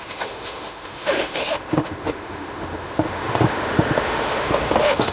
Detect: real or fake fake